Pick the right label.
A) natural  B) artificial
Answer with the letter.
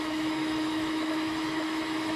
B